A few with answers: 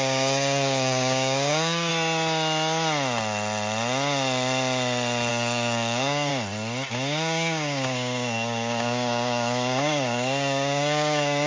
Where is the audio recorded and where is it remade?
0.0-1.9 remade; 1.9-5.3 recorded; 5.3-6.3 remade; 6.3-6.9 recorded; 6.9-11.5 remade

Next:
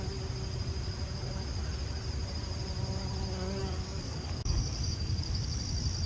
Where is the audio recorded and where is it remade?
0.0-3.6 recorded; 3.6-5.6 remade; 5.6-6.1 recorded